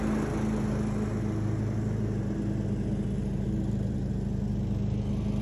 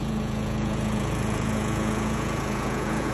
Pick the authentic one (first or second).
first